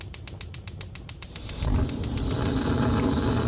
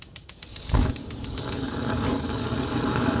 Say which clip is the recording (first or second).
first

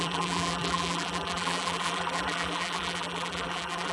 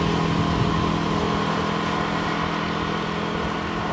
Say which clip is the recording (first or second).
second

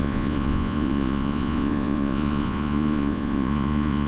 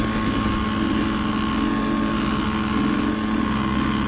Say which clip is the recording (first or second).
second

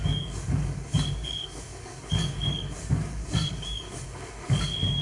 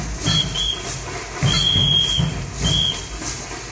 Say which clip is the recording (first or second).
second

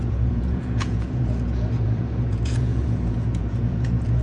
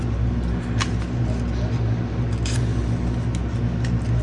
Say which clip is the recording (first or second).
second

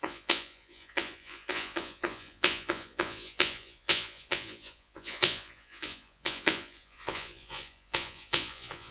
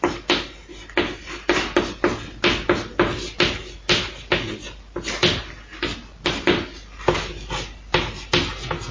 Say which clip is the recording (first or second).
second